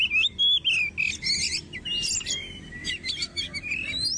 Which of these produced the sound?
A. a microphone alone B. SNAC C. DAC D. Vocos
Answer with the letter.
A